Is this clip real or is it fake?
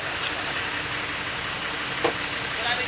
real